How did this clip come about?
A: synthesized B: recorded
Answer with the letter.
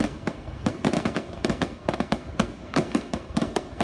A